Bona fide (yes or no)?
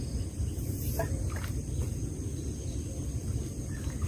yes